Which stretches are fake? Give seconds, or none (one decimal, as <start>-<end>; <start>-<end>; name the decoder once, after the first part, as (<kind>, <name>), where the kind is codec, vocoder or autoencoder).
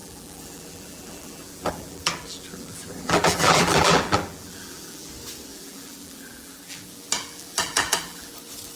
0.0-5.1 (vocoder, BigVGAN v2); 5.5-8.3